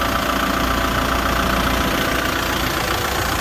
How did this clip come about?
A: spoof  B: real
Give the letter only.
B